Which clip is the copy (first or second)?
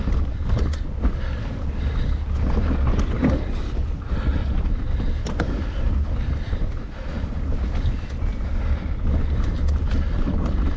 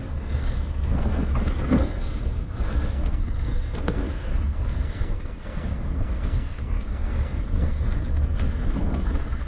second